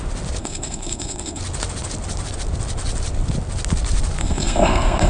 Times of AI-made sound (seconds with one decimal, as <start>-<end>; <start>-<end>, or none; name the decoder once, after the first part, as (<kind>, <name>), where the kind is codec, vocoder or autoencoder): 0.4-1.4 (codec, SNAC); 4.2-5.1